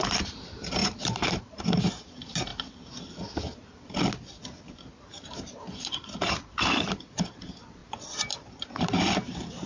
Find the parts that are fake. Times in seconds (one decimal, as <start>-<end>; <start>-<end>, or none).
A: 0.0-2.5; 5.0-7.8; 8.3-9.7